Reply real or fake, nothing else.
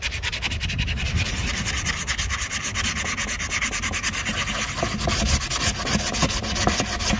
real